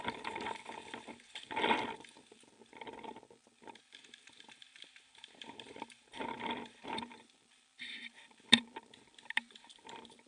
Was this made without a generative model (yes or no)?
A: no